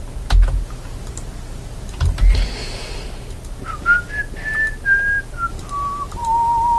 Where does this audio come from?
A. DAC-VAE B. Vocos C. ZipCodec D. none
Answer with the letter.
D